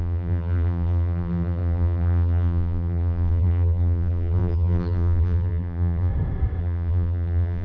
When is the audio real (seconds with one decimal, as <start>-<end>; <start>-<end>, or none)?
6.1-6.6